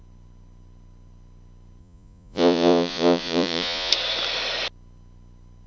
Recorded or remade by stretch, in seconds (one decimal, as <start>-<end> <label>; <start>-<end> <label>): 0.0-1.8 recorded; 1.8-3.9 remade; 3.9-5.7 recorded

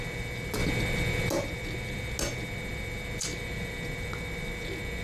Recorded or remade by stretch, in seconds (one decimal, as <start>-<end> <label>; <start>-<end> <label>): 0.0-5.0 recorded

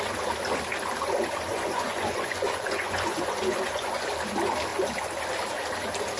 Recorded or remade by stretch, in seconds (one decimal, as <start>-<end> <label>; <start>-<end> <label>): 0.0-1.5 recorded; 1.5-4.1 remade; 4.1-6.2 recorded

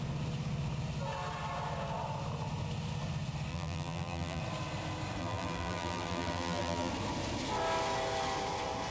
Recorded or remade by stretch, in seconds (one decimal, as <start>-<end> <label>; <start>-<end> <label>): 0.0-3.5 recorded; 3.5-4.4 remade; 4.4-5.2 recorded; 5.2-6.9 remade; 6.9-8.9 recorded

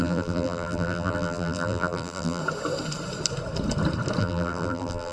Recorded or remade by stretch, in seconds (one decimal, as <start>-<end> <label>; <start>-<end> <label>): 0.0-2.4 remade; 2.4-4.2 recorded; 4.2-5.1 remade